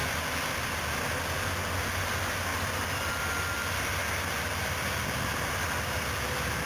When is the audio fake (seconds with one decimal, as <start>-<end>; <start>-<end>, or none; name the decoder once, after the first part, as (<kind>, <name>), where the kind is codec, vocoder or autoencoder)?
2.5-3.2 (vocoder, BigVGAN v2)